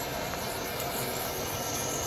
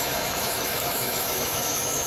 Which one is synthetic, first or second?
second